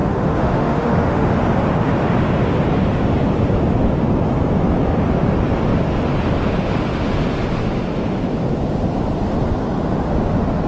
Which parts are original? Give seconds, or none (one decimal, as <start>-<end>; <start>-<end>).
1.4-10.7

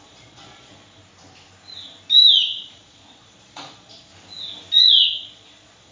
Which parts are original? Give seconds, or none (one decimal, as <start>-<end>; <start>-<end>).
1.0-2.5; 4.1-4.8

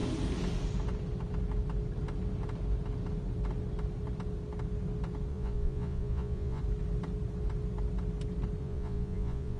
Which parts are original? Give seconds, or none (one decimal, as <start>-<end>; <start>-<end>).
0.0-5.3; 6.6-8.6

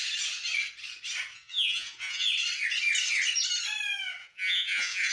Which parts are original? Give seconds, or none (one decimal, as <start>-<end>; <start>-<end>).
0.0-1.3; 2.3-4.2

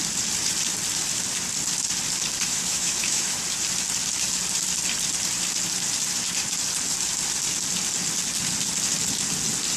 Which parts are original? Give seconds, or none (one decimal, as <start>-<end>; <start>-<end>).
0.0-2.5; 3.4-9.8

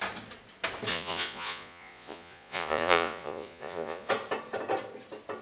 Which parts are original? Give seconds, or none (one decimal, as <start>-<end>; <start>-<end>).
0.0-0.9; 4.1-5.4

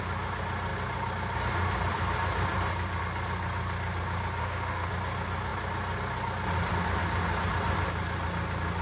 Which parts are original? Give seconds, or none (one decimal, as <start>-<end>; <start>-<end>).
0.0-4.4; 4.9-8.8